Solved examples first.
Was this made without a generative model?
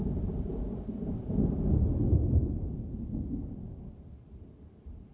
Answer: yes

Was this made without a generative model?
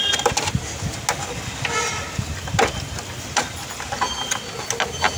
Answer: yes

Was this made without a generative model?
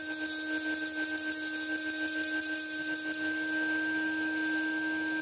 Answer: yes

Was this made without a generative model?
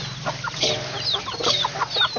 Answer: yes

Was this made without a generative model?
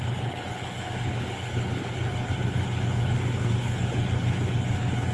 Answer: no